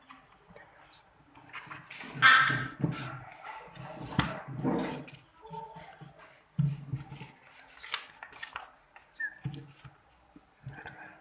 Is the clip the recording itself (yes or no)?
yes